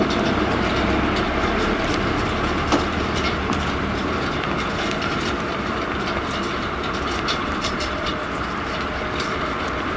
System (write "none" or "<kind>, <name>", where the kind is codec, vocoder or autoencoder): vocoder, BigVGAN v2